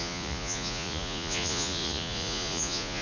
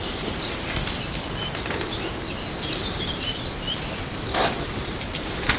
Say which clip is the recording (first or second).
second